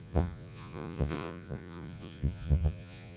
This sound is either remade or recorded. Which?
remade